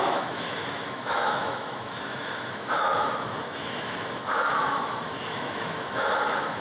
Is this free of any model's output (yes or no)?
no